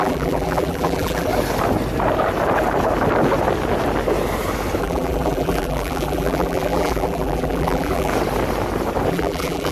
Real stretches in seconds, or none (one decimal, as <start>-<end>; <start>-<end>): 1.3-4.8; 8.1-9.1